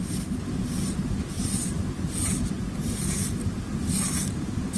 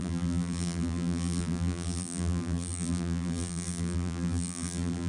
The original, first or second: first